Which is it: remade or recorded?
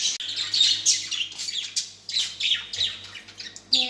recorded